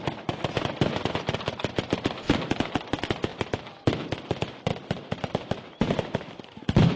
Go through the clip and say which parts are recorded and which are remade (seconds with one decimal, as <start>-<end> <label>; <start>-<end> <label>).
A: 0.0-3.3 remade; 3.3-4.3 recorded; 4.3-7.0 remade